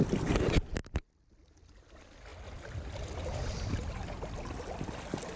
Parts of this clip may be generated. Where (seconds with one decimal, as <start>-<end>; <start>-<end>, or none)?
none